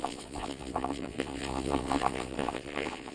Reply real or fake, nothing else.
fake